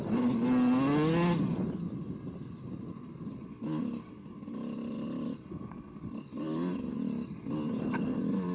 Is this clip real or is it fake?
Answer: real